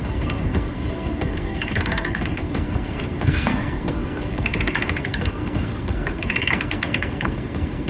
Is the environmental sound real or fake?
fake